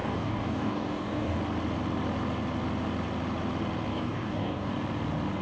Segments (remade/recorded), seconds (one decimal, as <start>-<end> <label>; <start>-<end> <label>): 0.0-1.4 remade; 1.4-3.9 recorded; 3.9-4.7 remade; 4.7-5.4 recorded